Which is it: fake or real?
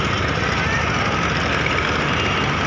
real